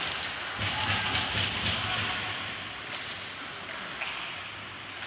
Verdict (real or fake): real